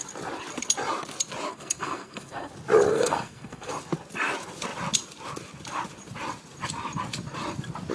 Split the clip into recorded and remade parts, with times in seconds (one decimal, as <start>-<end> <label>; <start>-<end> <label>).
0.0-1.5 recorded; 1.5-2.5 remade; 2.5-2.9 recorded; 2.9-3.7 remade; 3.7-7.9 recorded